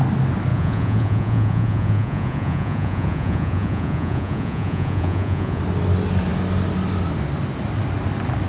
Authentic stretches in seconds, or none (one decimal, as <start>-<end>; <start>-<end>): 0.0-0.5; 5.6-8.5